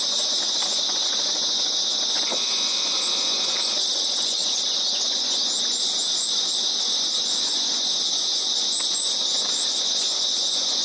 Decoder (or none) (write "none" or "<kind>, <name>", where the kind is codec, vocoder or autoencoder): vocoder, Vocos